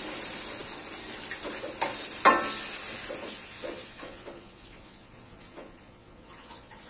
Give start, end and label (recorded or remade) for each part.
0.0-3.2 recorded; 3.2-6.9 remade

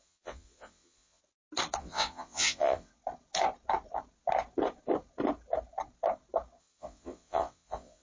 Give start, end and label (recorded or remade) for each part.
0.0-1.2 remade; 1.2-1.8 recorded; 1.8-2.9 remade; 2.9-6.6 recorded; 6.6-8.0 remade

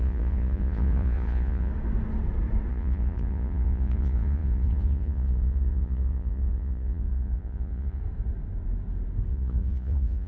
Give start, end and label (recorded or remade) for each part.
0.0-1.7 remade; 1.7-2.7 recorded; 2.7-8.0 remade; 8.0-9.3 recorded; 9.3-10.3 remade